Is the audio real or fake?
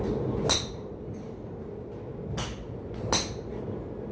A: real